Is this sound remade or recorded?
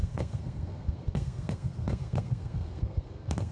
remade